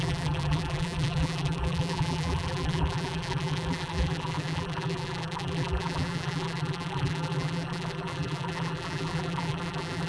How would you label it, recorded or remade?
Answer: remade